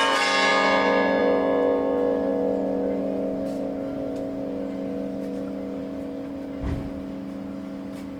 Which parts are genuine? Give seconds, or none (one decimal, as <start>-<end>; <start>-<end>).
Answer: 0.0-8.2